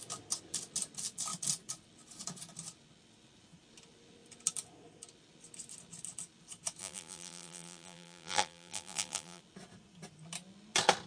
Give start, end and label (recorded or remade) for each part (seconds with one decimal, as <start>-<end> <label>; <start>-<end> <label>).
0.0-6.8 recorded; 6.8-9.4 remade; 9.4-11.1 recorded